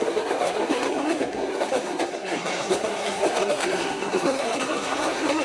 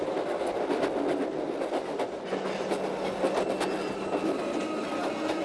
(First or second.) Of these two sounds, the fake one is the first